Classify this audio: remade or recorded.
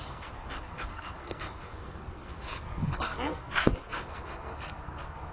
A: remade